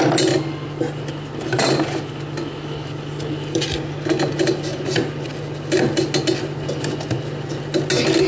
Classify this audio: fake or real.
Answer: real